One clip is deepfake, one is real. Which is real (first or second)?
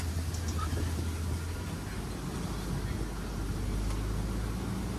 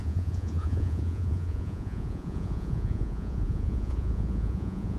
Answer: first